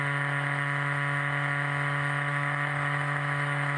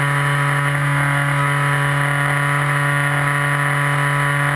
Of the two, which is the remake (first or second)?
first